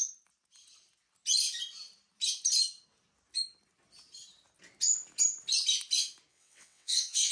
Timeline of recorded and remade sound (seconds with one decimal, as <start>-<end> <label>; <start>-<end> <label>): 0.0-6.3 recorded; 6.3-7.3 remade